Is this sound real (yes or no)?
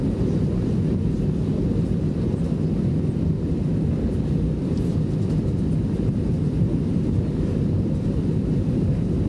no